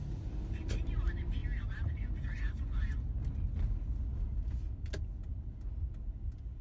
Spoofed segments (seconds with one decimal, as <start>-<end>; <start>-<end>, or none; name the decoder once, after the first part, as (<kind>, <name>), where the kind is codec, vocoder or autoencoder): none